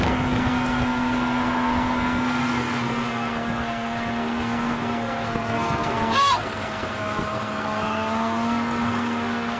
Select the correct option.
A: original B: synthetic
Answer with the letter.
B